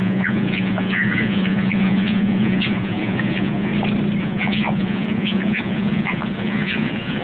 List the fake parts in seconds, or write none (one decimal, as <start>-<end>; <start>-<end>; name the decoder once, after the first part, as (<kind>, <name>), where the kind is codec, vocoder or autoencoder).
0.0-3.7 (vocoder, Vocos); 4.2-7.2